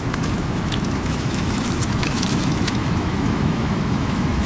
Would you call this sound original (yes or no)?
no